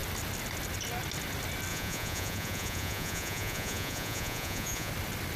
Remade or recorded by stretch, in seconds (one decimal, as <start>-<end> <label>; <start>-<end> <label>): 0.0-1.7 recorded; 1.7-4.9 remade; 4.9-5.4 recorded

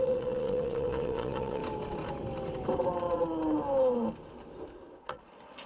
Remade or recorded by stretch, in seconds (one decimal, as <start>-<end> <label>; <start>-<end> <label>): 0.0-1.6 remade; 1.6-5.0 recorded; 5.0-5.7 remade

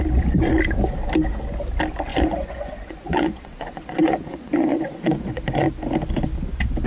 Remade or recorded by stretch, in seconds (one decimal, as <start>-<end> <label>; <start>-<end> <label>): 0.0-2.1 recorded; 2.1-5.7 remade; 5.7-6.9 recorded

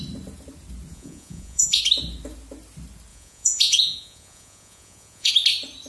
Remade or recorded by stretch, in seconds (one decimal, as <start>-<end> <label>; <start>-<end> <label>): 0.0-0.9 recorded; 0.9-1.8 remade; 1.8-3.1 recorded; 3.1-5.3 remade; 5.3-5.9 recorded